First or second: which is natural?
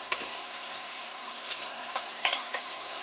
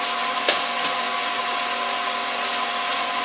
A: second